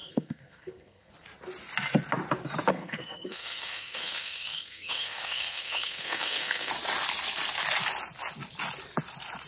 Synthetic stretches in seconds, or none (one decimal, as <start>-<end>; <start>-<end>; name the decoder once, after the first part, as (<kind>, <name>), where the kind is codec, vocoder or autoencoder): 0.0-1.1 (codec, SNAC); 2.7-6.7